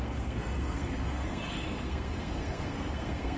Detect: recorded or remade remade